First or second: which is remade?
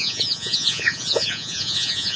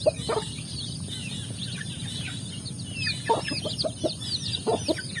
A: first